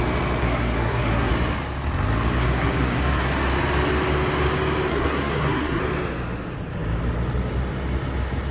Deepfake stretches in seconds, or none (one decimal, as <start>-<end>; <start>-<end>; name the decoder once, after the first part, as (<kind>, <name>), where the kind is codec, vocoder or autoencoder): 0.4-1.3 (codec, SNAC); 2.4-3.3; 4.9-5.8

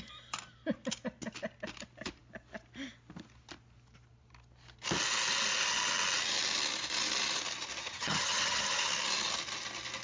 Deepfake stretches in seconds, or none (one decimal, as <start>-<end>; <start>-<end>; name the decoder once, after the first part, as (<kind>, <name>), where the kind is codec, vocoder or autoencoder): 7.8-8.8 (vocoder, HiFi-GAN)

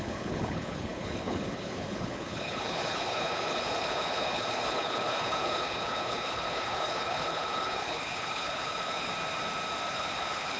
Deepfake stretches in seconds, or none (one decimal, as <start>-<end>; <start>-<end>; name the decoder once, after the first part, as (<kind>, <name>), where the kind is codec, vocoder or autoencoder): 0.0-9.1 (codec, HILCodec); 9.9-10.6

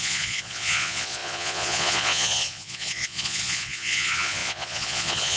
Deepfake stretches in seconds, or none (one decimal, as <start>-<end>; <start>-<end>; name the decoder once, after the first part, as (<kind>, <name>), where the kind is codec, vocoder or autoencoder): 0.0-5.4 (vocoder, Vocos)